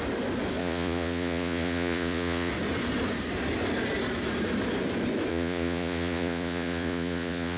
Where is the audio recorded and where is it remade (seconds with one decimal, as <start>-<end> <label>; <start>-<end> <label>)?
0.0-0.6 recorded; 0.6-2.5 remade; 2.5-5.3 recorded; 5.3-7.6 remade